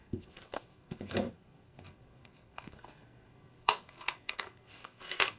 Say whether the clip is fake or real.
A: fake